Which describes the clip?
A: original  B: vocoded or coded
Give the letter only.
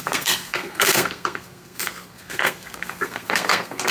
B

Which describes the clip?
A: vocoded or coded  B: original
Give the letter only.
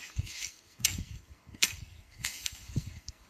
A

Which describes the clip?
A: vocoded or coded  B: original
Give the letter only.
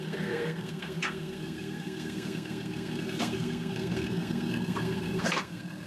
A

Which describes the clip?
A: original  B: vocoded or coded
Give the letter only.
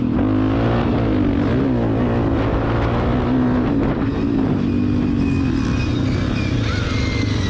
A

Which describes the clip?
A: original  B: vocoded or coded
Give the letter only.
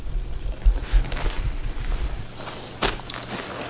A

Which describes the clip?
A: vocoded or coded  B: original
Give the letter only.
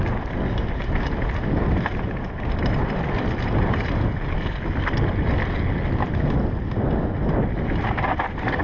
B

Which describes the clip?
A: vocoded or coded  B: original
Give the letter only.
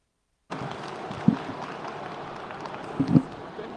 B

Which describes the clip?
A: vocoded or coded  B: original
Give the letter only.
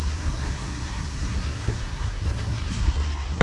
A